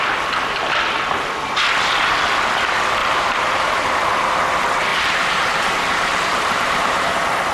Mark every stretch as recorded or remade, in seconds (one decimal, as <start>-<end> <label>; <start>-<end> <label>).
0.0-3.0 recorded; 3.0-4.5 remade; 4.5-4.9 recorded; 4.9-7.1 remade; 7.1-7.5 recorded